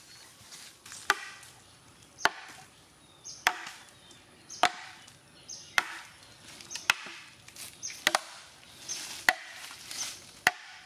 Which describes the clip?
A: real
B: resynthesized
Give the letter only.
A